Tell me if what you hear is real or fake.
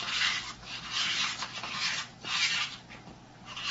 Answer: real